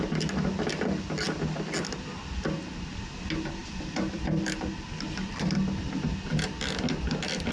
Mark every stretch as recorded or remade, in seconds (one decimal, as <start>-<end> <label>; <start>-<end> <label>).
0.0-3.6 recorded; 3.6-6.1 remade; 6.1-7.5 recorded